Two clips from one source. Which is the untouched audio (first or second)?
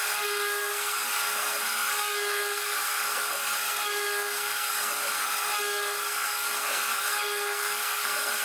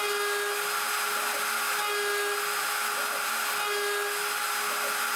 second